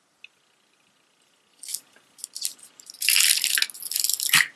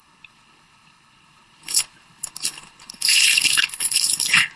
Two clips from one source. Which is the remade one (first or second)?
second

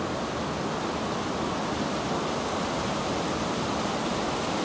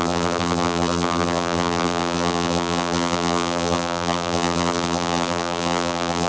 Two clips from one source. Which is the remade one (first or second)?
second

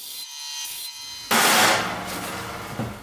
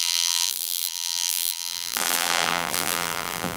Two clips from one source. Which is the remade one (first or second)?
second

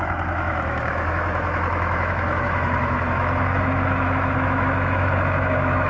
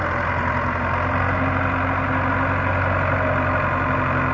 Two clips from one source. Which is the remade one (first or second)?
first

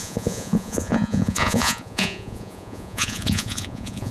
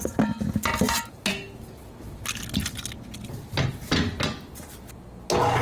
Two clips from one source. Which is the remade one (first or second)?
first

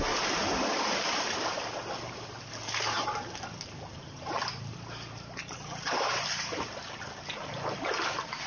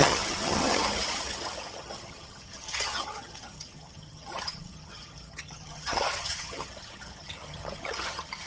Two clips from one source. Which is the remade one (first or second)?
second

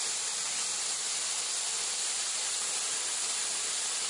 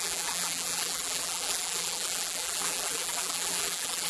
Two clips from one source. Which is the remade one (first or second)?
second